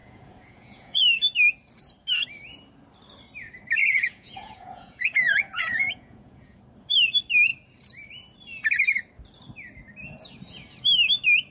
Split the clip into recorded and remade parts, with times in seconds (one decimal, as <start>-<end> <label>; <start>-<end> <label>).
0.0-1.0 remade; 1.0-3.8 recorded; 3.8-6.6 remade; 6.6-11.5 recorded